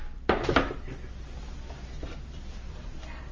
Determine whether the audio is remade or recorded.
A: remade